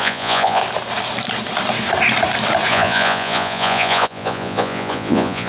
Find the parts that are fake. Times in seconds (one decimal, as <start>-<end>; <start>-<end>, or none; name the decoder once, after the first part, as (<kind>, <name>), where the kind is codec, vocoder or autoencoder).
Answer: 0.0-0.6 (vocoder, Vocos); 2.7-5.5